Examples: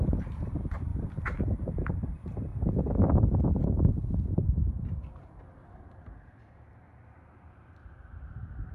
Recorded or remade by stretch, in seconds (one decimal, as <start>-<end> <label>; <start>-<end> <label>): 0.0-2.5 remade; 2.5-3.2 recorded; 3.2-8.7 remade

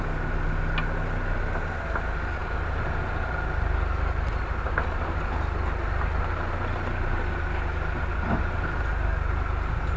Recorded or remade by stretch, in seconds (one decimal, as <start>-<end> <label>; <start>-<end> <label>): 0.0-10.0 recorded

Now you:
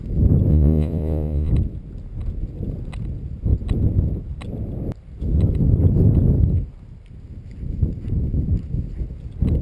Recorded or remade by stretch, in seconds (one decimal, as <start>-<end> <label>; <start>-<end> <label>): 0.0-0.5 recorded; 0.5-1.5 remade; 1.5-9.6 recorded